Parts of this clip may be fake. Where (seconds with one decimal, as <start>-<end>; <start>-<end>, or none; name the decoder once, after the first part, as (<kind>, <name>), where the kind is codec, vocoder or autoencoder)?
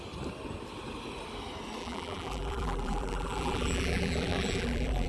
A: 1.8-5.1 (vocoder, BigVGAN v2)